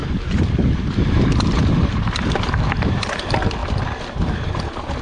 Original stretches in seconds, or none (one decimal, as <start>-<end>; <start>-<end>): 3.0-3.6